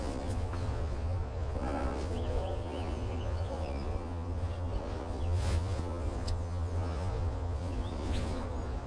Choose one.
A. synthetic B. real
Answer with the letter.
A